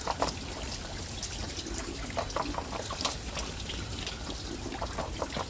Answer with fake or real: real